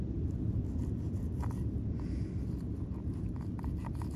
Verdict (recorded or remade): recorded